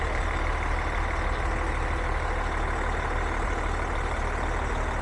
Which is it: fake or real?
real